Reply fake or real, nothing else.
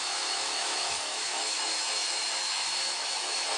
fake